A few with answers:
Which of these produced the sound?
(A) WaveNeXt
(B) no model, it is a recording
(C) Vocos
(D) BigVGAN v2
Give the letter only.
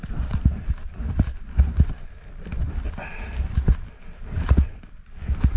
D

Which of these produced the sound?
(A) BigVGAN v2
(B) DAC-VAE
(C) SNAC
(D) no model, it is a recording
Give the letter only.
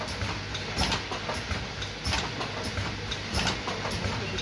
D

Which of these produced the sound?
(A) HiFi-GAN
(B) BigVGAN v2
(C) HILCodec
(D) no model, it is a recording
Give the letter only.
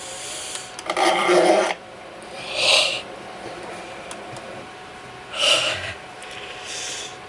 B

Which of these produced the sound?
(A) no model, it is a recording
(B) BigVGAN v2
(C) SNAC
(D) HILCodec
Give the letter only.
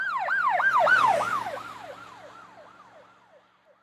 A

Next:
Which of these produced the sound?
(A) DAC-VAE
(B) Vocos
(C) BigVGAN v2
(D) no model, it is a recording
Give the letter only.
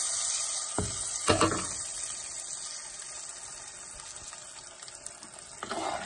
D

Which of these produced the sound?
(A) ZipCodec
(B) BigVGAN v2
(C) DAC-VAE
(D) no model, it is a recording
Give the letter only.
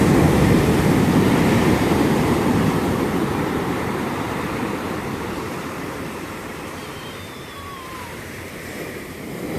B